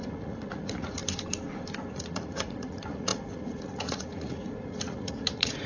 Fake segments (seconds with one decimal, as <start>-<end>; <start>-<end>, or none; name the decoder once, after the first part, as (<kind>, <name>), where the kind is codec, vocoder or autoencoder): 0.0-1.0 (vocoder, Vocos); 1.9-5.7